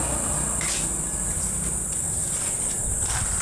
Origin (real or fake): real